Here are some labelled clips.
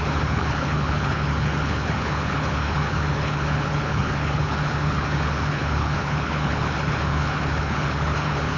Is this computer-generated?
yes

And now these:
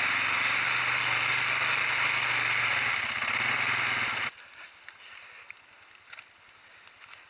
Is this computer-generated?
no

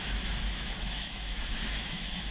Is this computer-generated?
yes